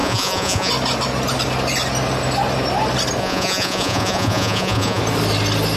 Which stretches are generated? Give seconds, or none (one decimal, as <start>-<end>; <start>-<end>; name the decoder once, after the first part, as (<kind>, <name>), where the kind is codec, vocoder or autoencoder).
0.0-0.7 (vocoder, Vocos); 3.2-5.0